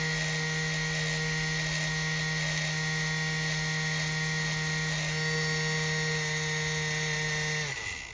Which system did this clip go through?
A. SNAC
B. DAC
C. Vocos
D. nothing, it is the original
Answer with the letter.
D